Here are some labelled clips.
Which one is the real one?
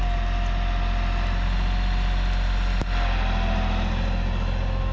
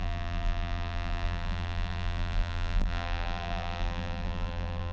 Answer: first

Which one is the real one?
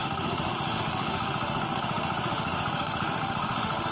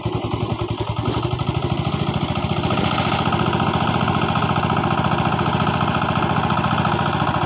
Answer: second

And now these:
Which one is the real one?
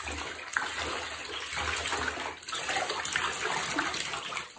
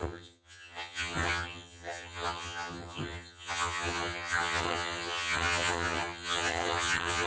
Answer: first